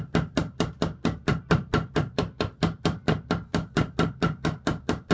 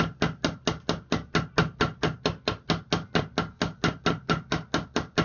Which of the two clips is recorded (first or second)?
second